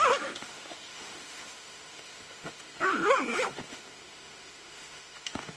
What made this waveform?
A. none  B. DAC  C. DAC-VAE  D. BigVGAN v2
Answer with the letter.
C